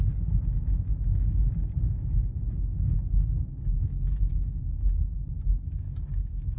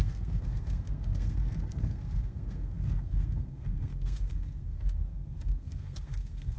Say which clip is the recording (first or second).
first